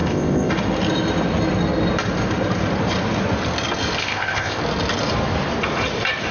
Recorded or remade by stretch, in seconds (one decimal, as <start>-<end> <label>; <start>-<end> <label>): 0.0-0.5 remade; 0.5-4.0 recorded; 4.0-4.6 remade; 4.6-6.3 recorded